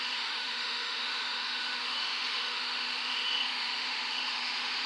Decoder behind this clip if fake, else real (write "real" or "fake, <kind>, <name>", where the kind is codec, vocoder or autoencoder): fake, autoencoder, DAC-VAE